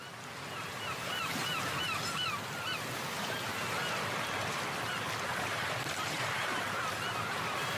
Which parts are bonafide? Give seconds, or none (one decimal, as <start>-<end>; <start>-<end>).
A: 0.0-5.3; 6.9-7.8